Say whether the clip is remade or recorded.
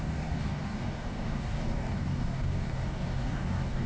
remade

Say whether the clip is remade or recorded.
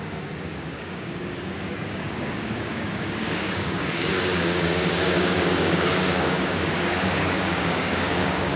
remade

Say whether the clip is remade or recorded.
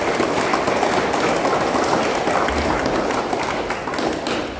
recorded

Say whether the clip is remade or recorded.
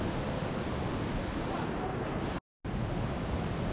recorded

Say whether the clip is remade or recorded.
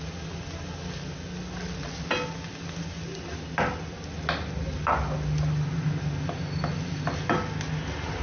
recorded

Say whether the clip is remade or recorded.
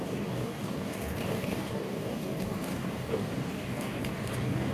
remade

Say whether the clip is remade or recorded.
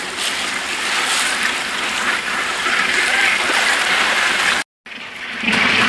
recorded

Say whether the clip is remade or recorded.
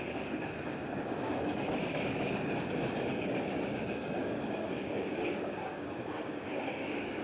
remade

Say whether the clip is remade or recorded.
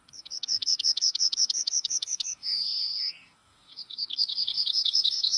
remade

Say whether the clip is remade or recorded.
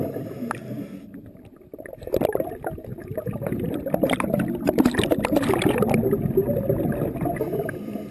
recorded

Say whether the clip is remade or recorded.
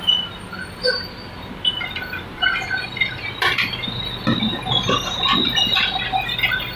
recorded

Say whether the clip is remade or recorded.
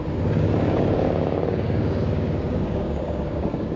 remade